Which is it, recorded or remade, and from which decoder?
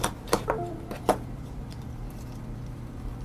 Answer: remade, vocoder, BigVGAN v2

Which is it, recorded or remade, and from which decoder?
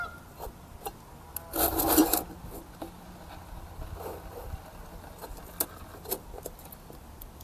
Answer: recorded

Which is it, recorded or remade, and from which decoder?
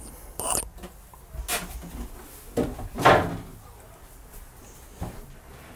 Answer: recorded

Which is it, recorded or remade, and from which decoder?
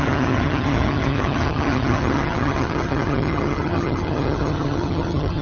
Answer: remade, vocoder, HiFi-GAN